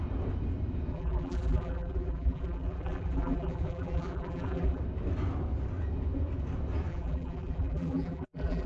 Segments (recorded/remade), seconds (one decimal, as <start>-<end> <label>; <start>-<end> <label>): 0.0-0.9 recorded; 0.9-4.8 remade; 4.8-6.9 recorded; 6.9-8.7 remade